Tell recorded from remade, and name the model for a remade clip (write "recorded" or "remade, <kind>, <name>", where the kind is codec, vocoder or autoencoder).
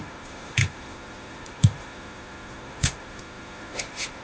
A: remade, autoencoder, DAC-VAE